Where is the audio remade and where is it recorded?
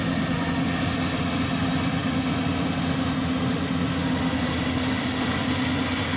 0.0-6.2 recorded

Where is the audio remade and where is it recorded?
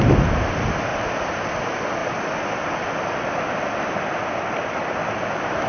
0.0-5.7 recorded